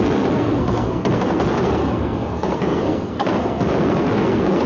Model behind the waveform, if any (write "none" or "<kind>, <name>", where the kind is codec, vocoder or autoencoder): codec, SNAC